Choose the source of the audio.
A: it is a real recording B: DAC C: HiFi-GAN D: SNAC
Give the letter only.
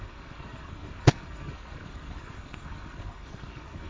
D